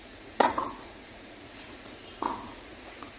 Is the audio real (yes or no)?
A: no